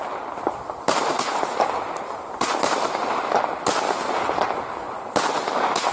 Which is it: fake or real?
real